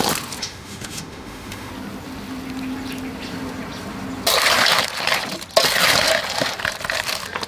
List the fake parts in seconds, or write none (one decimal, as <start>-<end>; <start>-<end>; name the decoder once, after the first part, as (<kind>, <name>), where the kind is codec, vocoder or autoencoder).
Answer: 0.4-1.7 (autoencoder, DAC-VAE)